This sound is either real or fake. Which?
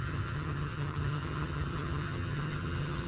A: fake